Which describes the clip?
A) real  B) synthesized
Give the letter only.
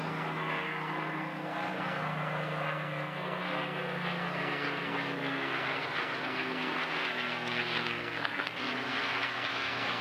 B